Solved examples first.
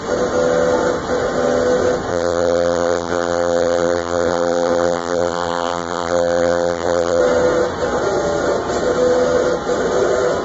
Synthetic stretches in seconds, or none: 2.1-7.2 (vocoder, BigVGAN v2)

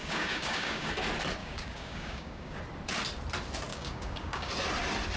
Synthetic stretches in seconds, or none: 0.0-0.9 (codec, DAC); 1.4-2.6; 3.7-4.5